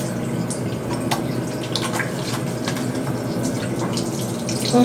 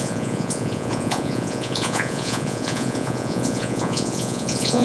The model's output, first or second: second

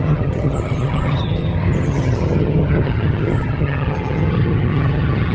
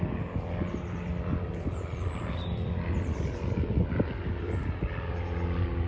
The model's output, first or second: first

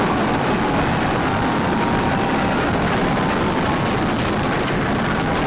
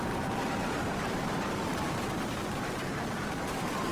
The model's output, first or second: second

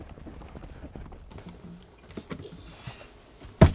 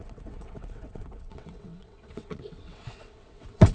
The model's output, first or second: second